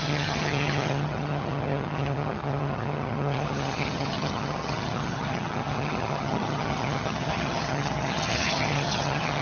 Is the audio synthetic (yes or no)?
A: yes